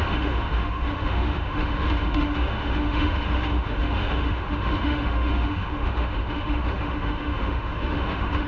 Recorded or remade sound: remade